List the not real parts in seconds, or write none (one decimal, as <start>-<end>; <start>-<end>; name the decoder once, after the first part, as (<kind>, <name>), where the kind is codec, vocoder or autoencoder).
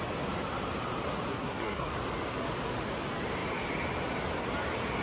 1.3-1.9 (codec, SNAC)